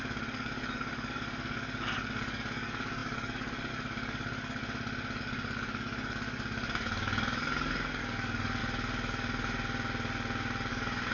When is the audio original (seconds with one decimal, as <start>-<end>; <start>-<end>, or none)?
4.6-5.2; 8.6-10.7